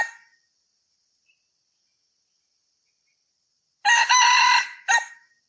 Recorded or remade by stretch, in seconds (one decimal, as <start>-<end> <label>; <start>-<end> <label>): 0.0-5.5 recorded